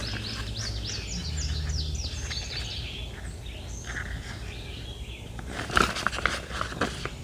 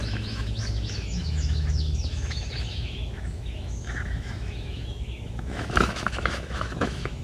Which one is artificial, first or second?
second